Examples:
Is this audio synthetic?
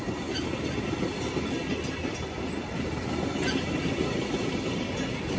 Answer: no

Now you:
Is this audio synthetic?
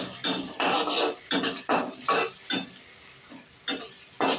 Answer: no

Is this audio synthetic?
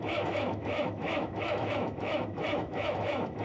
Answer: yes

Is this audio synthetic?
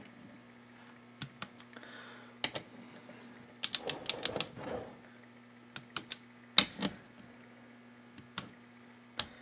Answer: no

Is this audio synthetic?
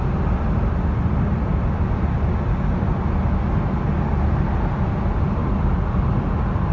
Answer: no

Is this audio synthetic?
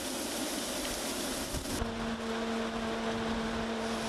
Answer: no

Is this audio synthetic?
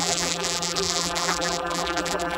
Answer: yes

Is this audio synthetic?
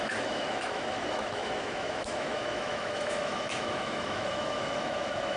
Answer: yes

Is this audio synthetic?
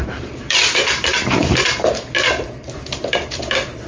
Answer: yes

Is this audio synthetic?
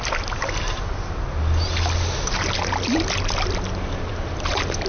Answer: no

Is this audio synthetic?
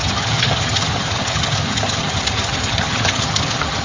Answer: yes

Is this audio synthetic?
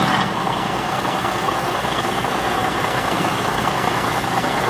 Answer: yes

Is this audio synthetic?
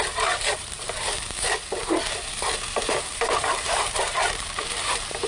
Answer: yes